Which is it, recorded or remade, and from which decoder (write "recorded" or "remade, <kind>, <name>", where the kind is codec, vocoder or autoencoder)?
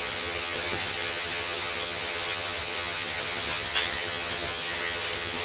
remade, vocoder, HiFi-GAN